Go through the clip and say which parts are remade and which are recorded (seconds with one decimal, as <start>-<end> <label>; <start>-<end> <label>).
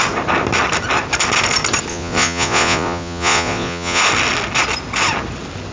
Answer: 0.0-1.9 recorded; 1.9-4.0 remade; 4.0-5.7 recorded